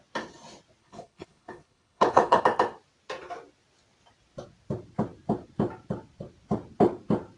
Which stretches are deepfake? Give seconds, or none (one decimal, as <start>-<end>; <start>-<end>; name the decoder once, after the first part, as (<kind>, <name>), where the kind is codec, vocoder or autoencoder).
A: 0.8-2.4 (codec, HILCodec)